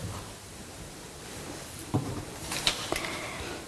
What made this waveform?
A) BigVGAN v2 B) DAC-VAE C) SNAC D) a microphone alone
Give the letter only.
A